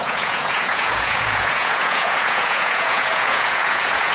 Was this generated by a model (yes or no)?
yes